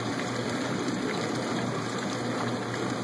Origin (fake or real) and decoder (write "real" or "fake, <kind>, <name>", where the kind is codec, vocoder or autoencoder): fake, vocoder, BigVGAN v2